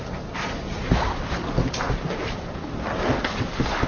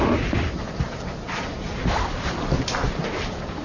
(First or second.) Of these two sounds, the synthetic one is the second